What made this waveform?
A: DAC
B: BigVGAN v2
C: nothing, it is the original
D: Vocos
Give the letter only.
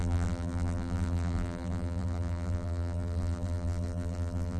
B